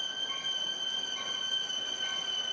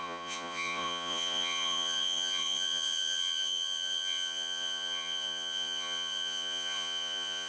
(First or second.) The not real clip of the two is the second